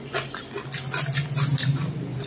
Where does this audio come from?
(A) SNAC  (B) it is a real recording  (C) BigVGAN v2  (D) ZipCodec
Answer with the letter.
B